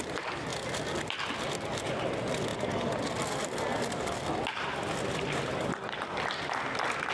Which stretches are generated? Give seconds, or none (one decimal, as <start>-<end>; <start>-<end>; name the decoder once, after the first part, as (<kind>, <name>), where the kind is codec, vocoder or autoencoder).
none